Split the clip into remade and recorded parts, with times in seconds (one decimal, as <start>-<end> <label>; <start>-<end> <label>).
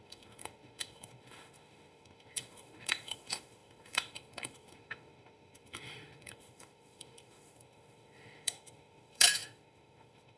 0.0-10.4 remade